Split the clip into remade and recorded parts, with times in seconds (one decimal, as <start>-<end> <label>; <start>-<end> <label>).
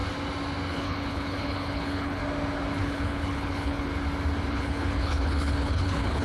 0.0-0.7 recorded; 0.7-2.2 remade; 2.2-2.8 recorded; 2.8-3.9 remade; 3.9-4.5 recorded; 4.5-6.2 remade